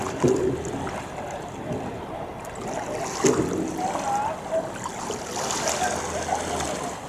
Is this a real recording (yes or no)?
yes